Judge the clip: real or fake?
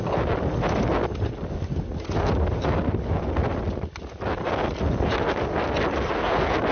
real